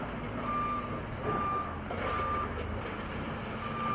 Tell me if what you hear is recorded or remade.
recorded